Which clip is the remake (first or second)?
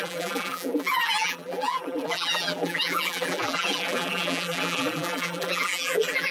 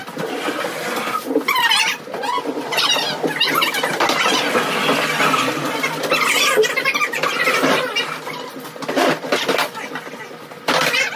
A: first